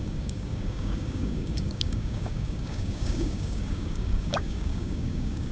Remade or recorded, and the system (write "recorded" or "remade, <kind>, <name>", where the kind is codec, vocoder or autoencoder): remade, codec, DAC